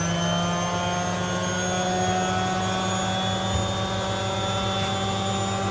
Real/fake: real